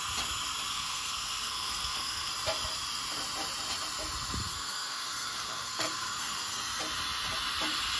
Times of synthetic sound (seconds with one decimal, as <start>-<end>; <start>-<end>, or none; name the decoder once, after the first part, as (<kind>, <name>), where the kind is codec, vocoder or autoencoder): 0.7-2.3 (codec, SNAC); 4.5-6.6